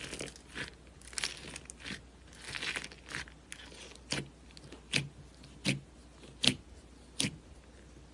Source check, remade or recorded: recorded